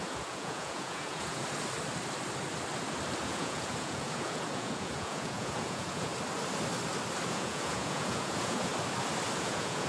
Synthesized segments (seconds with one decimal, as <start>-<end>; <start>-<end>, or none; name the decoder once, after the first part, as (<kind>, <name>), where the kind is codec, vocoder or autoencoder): 0.0-1.4 (vocoder, Vocos); 3.2-6.1; 7.3-8.7; 9.4-9.9